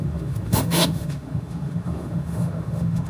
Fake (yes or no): yes